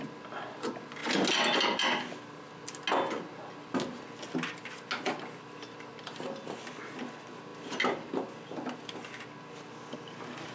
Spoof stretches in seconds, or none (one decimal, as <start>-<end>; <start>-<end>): none